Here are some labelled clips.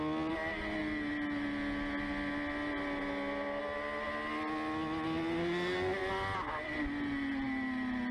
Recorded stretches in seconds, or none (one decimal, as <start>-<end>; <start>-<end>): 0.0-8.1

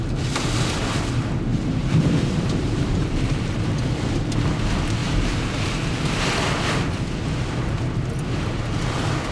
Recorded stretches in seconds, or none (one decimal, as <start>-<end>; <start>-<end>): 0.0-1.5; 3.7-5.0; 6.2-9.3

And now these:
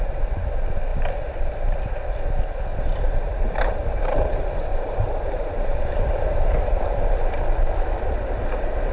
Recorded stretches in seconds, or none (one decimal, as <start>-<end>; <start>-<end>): 0.0-2.7; 4.3-4.7; 7.1-8.9